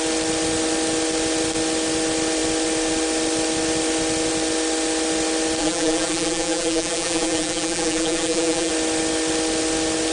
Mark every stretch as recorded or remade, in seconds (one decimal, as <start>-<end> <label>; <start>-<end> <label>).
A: 0.0-5.6 recorded; 5.6-8.7 remade; 8.7-10.1 recorded